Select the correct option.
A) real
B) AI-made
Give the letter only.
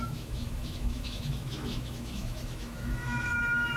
B